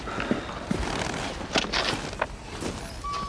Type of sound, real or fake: real